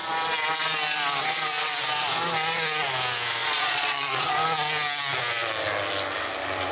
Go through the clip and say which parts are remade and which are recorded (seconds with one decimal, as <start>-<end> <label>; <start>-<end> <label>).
0.0-3.4 recorded; 3.4-4.3 remade; 4.3-6.7 recorded